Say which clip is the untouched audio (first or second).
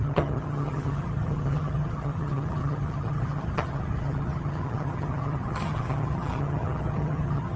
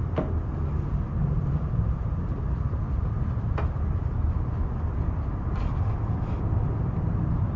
second